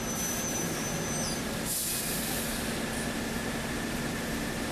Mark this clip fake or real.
real